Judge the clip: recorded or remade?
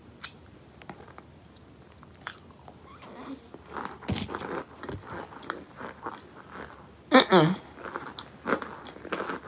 recorded